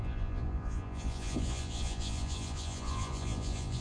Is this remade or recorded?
remade